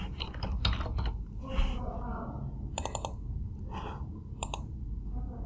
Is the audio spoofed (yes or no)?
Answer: no